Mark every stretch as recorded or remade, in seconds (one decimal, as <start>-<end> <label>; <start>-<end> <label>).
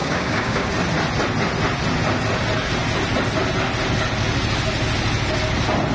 0.0-0.7 remade; 0.7-5.9 recorded